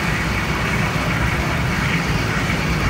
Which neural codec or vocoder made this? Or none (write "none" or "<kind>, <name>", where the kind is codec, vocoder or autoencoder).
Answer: vocoder, BigVGAN v2